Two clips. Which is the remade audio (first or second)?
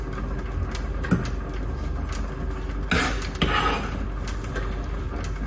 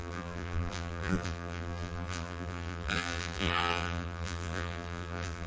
second